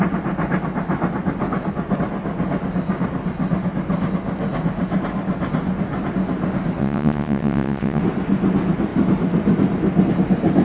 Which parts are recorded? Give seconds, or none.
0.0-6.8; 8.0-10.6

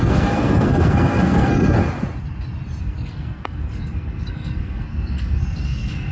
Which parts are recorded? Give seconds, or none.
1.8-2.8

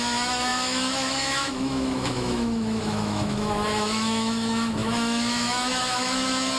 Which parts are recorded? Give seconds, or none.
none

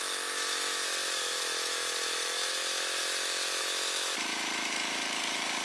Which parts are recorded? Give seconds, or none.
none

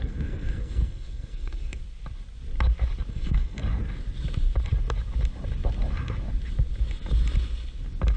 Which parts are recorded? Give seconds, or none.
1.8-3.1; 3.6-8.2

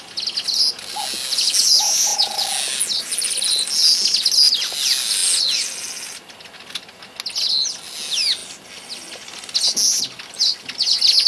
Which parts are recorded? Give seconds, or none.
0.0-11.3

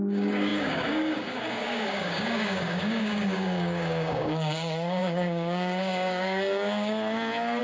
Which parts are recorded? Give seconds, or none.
none